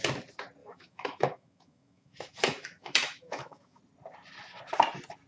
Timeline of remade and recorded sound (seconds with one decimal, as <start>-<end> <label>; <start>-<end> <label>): 0.0-0.6 recorded; 0.6-3.8 remade; 3.8-5.3 recorded